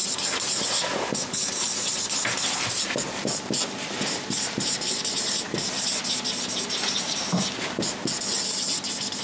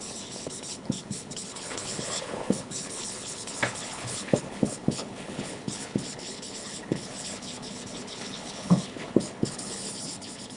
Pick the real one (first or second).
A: first